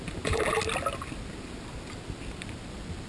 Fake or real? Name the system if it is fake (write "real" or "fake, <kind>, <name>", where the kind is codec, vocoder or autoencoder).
real